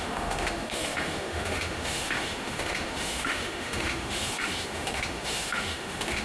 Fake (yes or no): yes